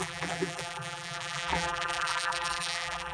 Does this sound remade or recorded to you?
remade